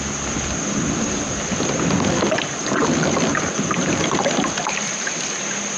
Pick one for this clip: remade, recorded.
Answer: remade